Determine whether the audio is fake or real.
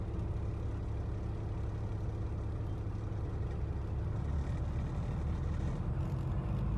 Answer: real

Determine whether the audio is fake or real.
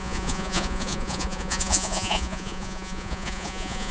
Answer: fake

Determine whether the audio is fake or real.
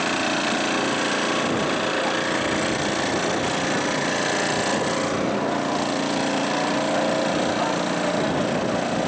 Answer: real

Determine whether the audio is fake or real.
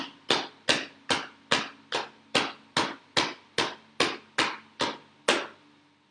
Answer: real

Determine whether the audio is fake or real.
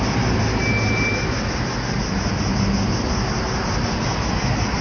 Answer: real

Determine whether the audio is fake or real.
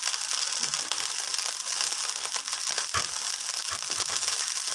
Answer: real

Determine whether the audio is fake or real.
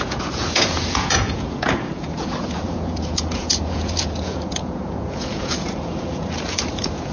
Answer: fake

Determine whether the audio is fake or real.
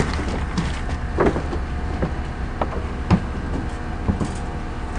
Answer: real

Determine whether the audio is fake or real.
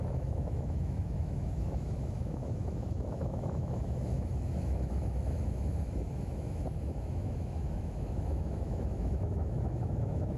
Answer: fake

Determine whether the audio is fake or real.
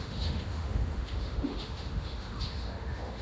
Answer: fake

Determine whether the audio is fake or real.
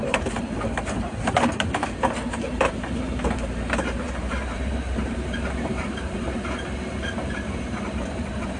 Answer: fake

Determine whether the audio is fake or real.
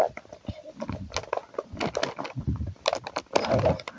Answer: real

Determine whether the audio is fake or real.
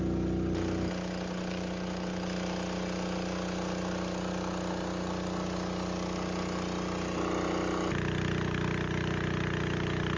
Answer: real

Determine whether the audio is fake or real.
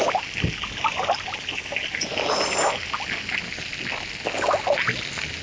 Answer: real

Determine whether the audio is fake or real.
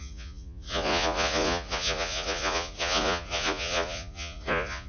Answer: fake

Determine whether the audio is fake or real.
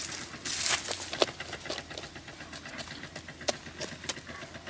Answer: real